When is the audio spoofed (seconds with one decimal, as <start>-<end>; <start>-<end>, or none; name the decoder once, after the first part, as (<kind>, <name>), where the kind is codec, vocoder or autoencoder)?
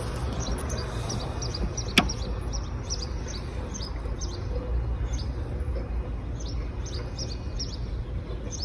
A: none